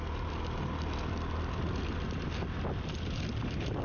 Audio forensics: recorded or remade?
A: recorded